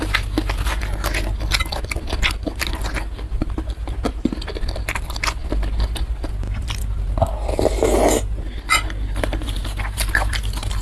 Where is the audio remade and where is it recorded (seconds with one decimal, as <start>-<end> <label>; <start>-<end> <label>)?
0.0-10.8 recorded